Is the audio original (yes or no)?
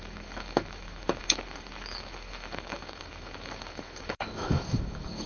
no